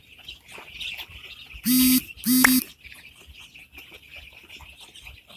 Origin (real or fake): real